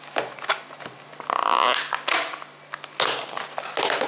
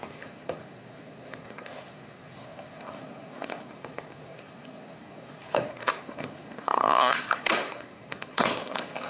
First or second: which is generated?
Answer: second